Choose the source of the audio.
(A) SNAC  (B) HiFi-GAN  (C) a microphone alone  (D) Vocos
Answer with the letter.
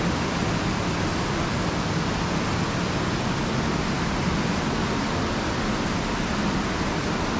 C